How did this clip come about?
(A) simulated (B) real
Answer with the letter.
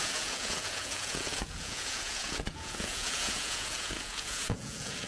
A